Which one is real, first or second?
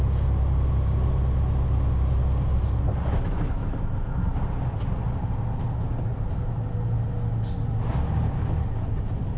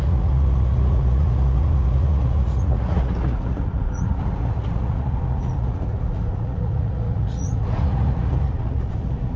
first